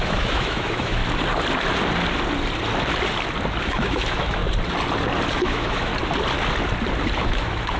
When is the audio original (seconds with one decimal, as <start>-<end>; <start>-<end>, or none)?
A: 1.0-3.6; 4.4-5.3; 5.9-7.2